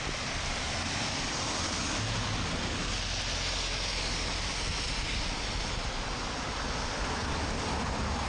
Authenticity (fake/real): real